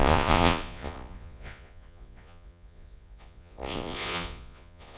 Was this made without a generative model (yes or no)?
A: no